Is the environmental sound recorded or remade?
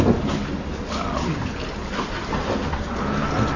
recorded